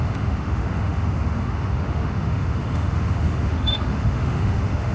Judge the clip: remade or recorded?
remade